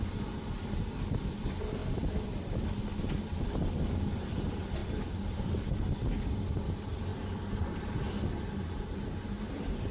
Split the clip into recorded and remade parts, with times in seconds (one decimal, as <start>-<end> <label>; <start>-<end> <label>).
0.0-9.9 recorded